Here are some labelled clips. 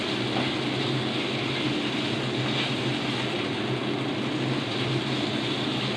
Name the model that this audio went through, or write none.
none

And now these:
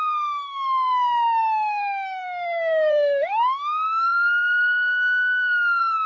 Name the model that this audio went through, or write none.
codec, SNAC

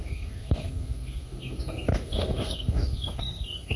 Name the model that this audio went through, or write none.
codec, SNAC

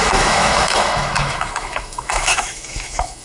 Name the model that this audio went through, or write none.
autoencoder, DAC-VAE